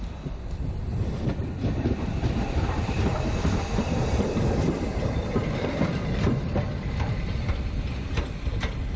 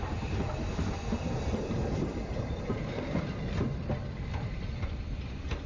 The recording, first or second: second